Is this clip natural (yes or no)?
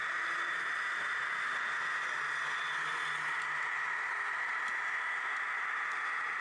yes